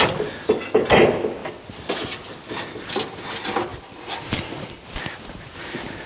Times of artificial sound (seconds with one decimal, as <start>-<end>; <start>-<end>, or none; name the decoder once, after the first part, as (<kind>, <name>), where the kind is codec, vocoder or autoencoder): 3.7-6.1 (vocoder, BigVGAN v2)